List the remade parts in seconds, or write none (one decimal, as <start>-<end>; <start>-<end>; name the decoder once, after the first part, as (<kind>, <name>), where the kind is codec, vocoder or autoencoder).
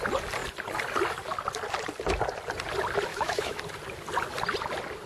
3.1-3.6 (autoencoder, DAC-VAE)